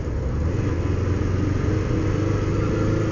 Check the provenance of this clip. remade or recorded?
recorded